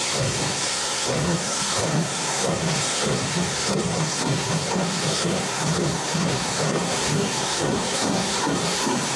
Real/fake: fake